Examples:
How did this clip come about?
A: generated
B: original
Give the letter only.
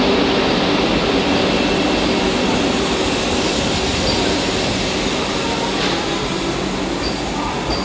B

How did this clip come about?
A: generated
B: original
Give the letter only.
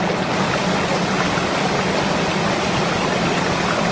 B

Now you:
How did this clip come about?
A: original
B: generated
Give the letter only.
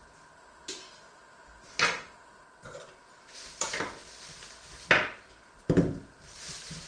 A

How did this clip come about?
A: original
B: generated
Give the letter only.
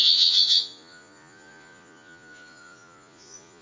B